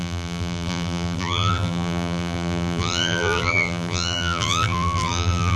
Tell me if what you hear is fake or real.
fake